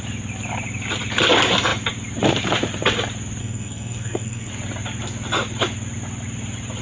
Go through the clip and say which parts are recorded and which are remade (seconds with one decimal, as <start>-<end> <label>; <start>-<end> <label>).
0.0-3.4 recorded; 3.4-4.5 remade; 4.5-6.8 recorded